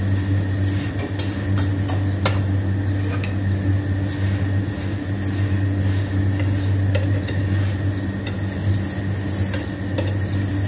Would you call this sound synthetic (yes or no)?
no